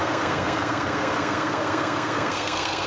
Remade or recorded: remade